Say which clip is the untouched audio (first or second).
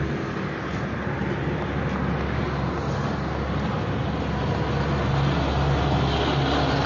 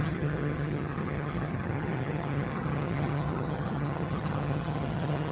first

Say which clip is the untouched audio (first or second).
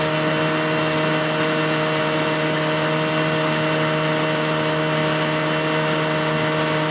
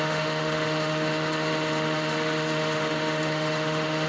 first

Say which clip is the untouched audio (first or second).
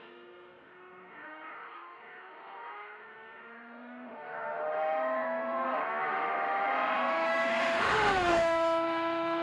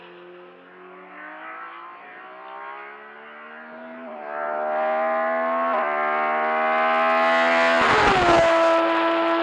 second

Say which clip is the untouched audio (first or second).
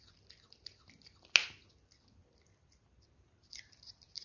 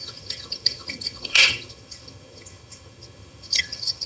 first